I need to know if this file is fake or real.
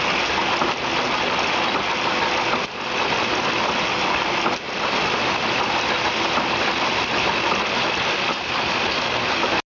real